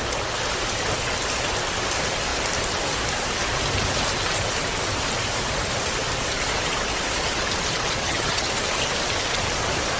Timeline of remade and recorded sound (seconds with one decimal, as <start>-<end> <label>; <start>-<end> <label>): 0.0-8.0 recorded; 8.0-8.5 remade; 8.5-10.0 recorded